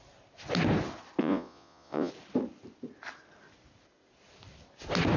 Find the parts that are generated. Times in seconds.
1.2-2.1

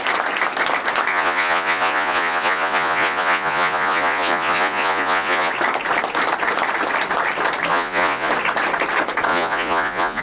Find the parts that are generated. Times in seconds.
1.1-5.5; 7.7-8.3; 9.3-10.2